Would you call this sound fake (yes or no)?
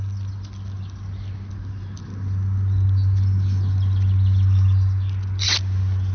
no